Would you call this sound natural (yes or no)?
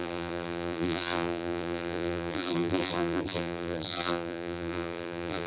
no